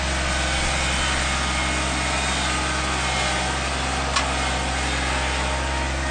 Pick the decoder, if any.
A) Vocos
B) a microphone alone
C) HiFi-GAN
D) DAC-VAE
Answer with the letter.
B